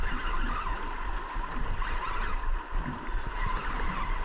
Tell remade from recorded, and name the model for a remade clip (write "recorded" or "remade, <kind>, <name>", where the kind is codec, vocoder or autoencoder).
remade, vocoder, BigVGAN v2